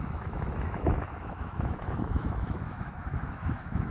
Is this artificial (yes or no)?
yes